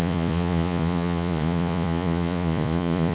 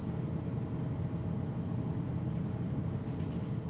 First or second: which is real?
second